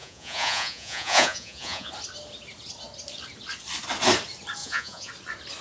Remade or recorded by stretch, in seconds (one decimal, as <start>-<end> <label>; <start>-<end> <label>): 0.0-1.9 remade; 1.9-4.6 recorded; 4.6-5.1 remade; 5.1-5.6 recorded